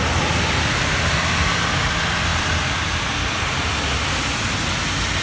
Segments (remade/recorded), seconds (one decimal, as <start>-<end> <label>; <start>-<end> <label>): 0.0-5.2 recorded